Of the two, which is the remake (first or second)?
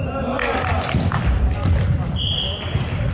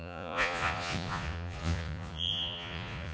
second